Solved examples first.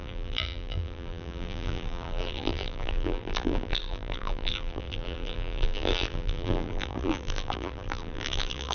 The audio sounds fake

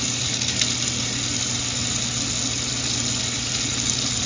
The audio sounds real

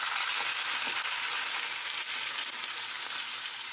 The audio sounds real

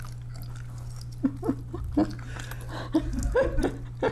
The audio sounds real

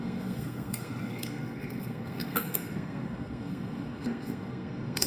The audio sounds fake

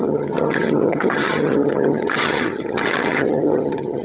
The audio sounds fake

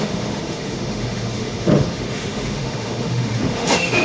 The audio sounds fake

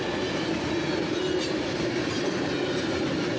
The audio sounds real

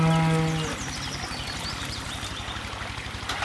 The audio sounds real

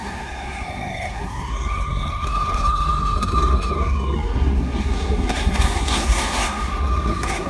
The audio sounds fake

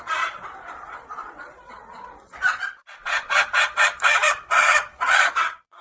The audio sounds fake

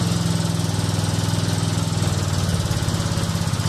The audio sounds real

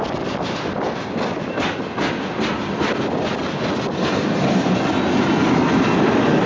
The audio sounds real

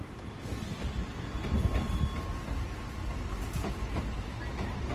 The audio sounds real